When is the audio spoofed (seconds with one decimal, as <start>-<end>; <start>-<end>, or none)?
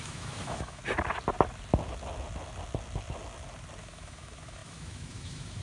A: 0.0-0.8; 3.8-5.6